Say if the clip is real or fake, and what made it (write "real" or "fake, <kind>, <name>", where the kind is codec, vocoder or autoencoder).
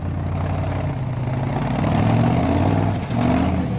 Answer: real